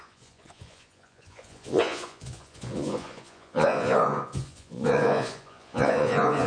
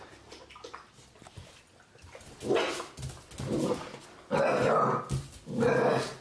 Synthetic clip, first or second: first